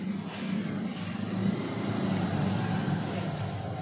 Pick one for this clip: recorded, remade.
recorded